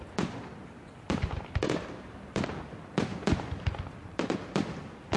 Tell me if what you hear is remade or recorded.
remade